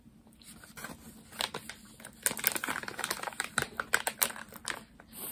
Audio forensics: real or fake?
real